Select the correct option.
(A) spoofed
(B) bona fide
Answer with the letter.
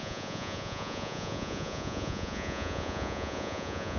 A